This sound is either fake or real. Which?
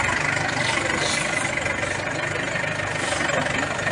real